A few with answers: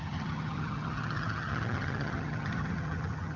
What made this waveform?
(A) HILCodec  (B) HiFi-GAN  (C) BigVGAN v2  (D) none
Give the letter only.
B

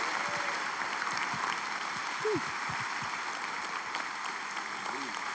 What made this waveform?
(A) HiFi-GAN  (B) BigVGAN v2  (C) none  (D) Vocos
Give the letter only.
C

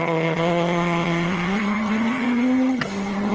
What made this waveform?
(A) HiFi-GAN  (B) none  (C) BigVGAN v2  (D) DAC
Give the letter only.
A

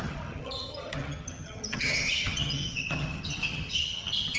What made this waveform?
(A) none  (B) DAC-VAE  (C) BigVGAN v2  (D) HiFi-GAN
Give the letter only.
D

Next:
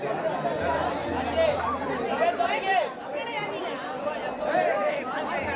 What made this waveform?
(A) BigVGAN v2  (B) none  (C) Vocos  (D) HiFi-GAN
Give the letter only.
B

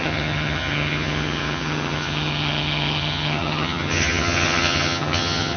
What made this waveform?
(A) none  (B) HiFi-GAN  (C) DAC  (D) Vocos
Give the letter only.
B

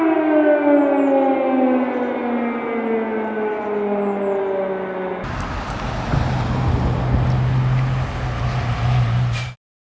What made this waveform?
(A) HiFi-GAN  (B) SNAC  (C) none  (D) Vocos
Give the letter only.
C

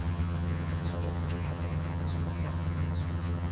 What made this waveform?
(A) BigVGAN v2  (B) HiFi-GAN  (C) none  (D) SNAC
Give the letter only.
B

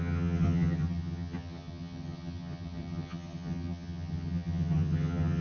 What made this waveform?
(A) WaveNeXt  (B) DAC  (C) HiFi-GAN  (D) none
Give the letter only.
C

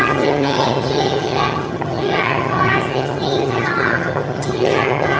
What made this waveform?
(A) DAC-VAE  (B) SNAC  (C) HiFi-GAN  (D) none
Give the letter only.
C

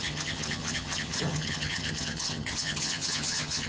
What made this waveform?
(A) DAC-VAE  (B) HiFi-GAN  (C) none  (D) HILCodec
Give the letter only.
B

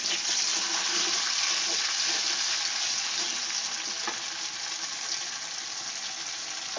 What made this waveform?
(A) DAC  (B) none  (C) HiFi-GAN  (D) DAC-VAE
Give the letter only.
B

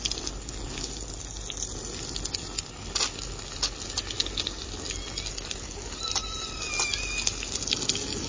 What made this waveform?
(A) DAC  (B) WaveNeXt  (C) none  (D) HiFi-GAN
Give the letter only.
C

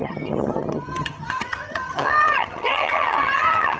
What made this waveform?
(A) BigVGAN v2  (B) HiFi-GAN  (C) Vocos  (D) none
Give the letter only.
B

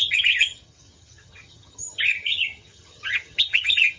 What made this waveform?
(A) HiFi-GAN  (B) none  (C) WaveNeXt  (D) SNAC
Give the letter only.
A